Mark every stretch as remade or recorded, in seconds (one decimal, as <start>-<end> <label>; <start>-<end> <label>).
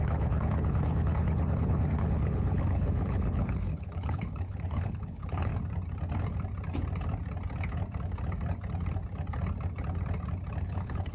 0.0-5.5 remade; 5.5-10.6 recorded; 10.6-11.1 remade